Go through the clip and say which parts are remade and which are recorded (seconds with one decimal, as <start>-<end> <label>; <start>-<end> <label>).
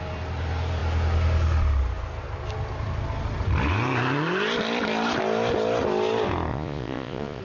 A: 0.0-6.5 recorded; 6.5-7.4 remade